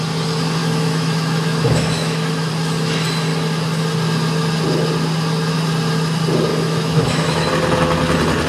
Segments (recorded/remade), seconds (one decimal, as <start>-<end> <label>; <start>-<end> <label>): 0.0-0.6 recorded; 0.6-2.5 remade; 2.5-6.5 recorded; 6.5-7.5 remade; 7.5-8.5 recorded